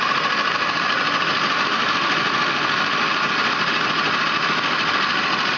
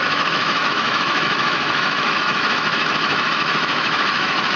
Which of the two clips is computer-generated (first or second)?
second